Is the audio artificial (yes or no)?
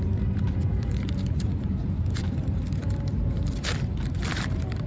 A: yes